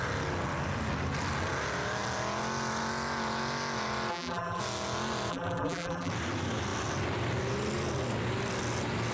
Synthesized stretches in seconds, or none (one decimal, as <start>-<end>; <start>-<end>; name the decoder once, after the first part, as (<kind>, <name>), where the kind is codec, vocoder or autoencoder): 4.1-4.6 (vocoder, BigVGAN v2); 5.3-6.1